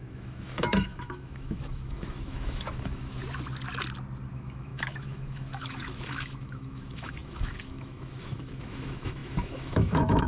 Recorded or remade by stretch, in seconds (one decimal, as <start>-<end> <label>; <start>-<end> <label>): 0.0-3.2 remade; 3.2-4.3 recorded; 4.3-10.3 remade